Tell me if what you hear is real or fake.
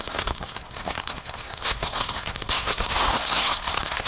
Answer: fake